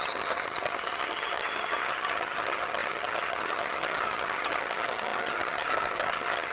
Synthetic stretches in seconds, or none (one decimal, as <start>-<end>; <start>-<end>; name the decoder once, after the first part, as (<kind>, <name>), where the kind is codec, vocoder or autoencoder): 0.0-6.5 (vocoder, HiFi-GAN)